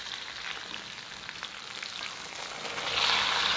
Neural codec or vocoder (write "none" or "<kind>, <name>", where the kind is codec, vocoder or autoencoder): none